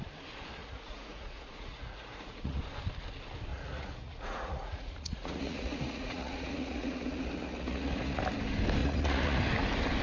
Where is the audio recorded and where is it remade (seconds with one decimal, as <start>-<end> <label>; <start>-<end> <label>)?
0.0-0.6 recorded; 0.6-2.6 remade; 2.6-3.5 recorded; 3.5-8.2 remade; 8.2-8.8 recorded; 8.8-9.4 remade; 9.4-10.0 recorded